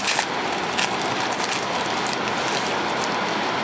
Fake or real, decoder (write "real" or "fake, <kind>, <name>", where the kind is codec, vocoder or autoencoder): real